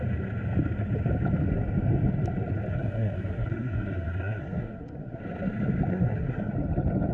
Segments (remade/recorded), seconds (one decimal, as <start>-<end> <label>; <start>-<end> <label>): 0.0-2.7 recorded; 2.7-5.2 remade; 5.2-5.9 recorded; 5.9-6.5 remade; 6.5-7.1 recorded